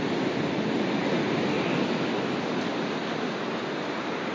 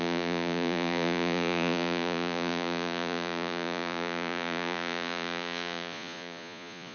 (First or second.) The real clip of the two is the first